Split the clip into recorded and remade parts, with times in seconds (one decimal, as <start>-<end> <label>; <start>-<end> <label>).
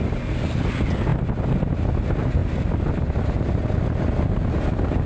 0.0-5.1 recorded